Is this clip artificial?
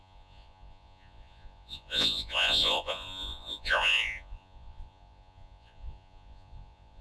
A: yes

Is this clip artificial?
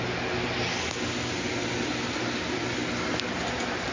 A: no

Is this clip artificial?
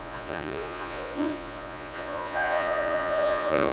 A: yes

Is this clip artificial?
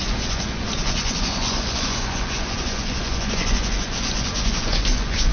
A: yes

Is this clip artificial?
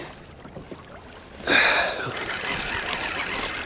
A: no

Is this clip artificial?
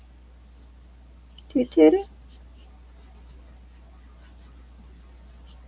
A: no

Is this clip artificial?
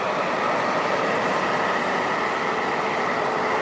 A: no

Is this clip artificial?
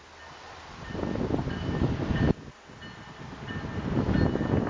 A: no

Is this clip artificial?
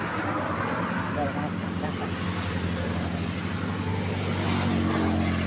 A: no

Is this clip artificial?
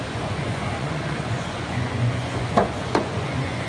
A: yes